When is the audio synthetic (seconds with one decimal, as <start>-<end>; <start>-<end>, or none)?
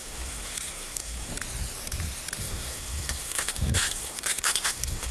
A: 0.0-1.3; 2.4-5.1